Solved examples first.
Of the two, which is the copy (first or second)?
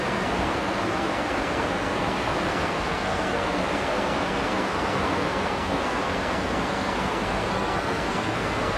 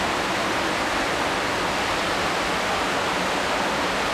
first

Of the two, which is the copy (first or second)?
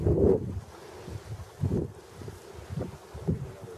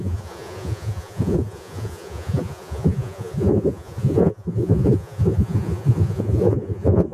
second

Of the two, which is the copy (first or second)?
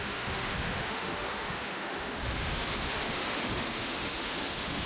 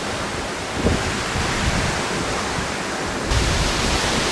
first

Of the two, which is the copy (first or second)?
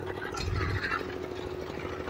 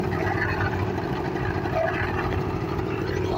second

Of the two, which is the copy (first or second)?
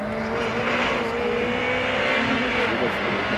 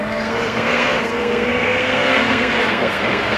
second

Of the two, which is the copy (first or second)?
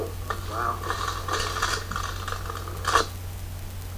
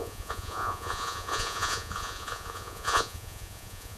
second